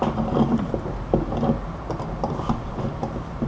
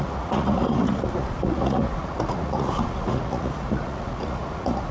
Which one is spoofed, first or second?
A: second